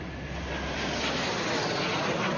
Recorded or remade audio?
recorded